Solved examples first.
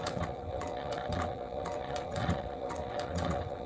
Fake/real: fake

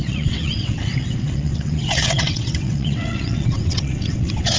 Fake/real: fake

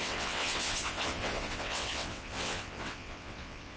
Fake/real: fake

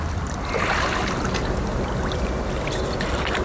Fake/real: real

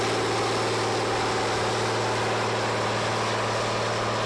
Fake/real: real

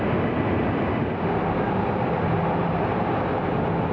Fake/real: real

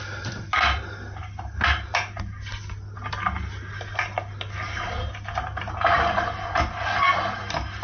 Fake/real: real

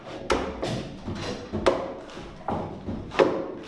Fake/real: real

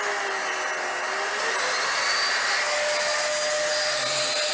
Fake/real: real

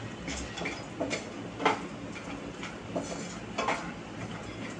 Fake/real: real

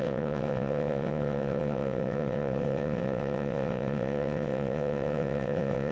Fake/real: fake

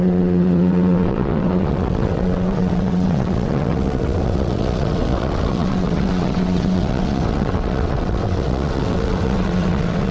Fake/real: fake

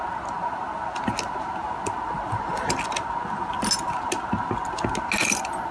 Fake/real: real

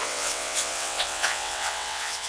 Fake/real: fake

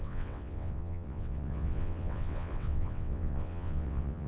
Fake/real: fake